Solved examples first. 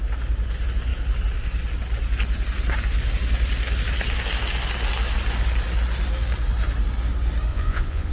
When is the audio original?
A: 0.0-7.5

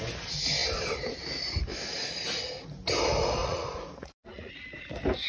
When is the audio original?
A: 0.0-3.4; 4.5-5.3

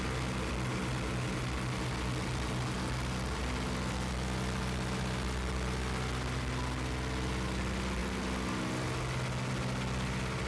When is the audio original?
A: 0.0-10.5

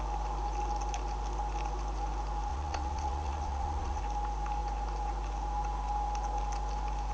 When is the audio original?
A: 0.0-2.5; 4.0-7.1

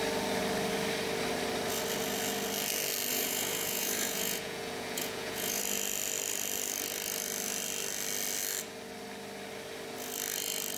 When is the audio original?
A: 0.0-3.1; 5.6-10.8

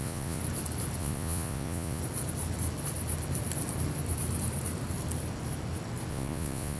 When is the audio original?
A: 0.4-1.0; 2.0-6.1